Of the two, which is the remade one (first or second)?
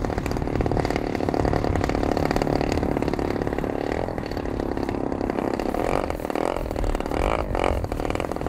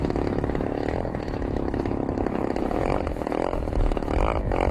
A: second